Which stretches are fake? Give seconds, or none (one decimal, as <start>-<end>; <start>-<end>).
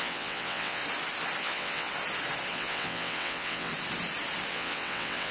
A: 0.0-0.8; 1.4-1.9; 2.5-3.7; 4.5-5.3